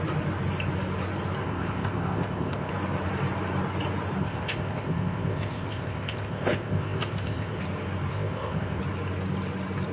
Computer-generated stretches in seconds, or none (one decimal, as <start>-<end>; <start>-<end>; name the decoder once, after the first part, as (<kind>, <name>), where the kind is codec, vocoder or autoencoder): 1.4-2.7 (codec, ZipCodec); 4.2-7.6; 8.1-8.8